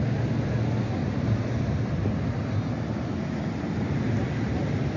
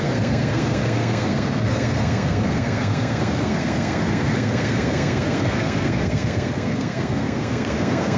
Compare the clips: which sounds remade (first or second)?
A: second